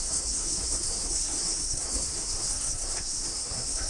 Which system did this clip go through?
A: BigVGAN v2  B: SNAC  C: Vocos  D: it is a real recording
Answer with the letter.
B